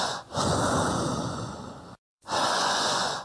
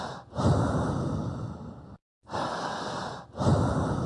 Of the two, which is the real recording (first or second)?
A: second